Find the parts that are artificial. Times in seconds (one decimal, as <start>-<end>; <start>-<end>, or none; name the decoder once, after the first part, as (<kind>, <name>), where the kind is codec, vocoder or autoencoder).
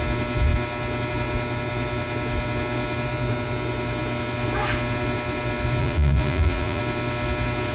5.8-6.8 (vocoder, Vocos)